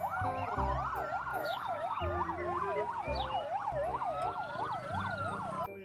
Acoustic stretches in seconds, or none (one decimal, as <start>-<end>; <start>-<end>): 0.0-1.3; 2.0-3.9; 4.6-5.8